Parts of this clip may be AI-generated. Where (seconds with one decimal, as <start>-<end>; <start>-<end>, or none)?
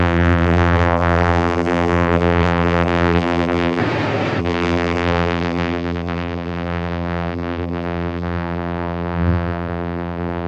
0.0-3.8; 4.4-10.5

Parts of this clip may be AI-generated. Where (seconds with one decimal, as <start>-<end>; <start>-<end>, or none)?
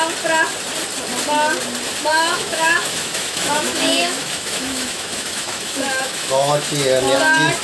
2.1-6.7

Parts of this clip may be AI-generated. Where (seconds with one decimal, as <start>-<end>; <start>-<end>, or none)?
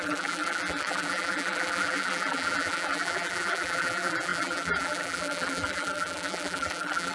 0.0-7.1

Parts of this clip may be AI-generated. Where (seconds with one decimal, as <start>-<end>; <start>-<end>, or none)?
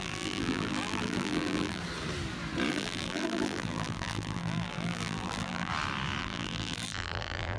0.0-1.8; 2.7-5.7; 6.2-7.6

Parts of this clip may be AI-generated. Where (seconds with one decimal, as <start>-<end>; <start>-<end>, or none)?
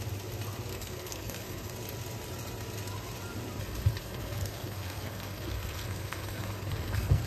0.7-1.7; 4.0-7.3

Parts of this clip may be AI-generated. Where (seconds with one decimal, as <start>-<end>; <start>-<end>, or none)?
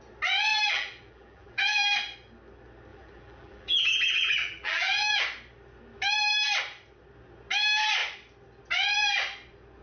0.5-1.9; 2.9-5.2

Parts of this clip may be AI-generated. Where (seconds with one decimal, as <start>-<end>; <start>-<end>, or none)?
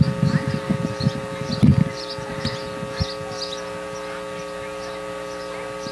none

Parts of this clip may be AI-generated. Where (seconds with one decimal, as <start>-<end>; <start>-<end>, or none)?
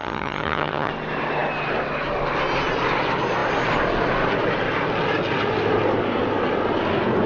0.0-0.9